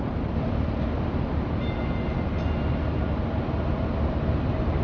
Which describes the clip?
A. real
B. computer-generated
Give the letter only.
A